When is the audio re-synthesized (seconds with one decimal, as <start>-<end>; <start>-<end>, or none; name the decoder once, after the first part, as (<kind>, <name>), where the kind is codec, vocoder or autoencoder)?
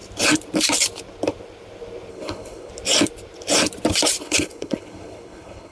2.1-2.7 (codec, HILCodec); 4.2-5.7